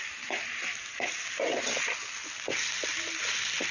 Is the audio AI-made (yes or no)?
no